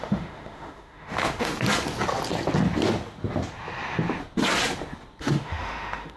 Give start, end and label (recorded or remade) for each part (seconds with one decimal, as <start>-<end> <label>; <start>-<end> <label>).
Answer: 0.0-1.5 remade; 1.5-5.2 recorded; 5.2-6.2 remade